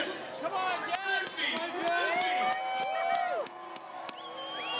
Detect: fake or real real